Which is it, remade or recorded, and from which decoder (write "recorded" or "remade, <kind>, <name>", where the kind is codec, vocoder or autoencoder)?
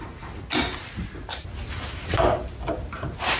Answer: recorded